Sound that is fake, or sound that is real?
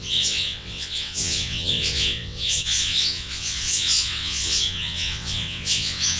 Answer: fake